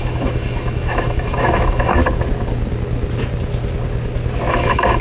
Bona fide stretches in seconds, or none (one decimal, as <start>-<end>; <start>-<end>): 2.0-4.5